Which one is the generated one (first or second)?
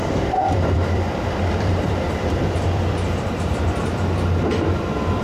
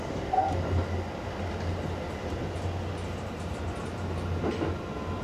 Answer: first